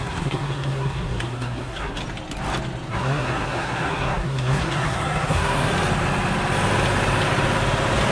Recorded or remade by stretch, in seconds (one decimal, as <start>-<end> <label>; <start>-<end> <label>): 0.0-2.0 remade; 2.0-2.9 recorded; 2.9-5.7 remade; 5.7-8.1 recorded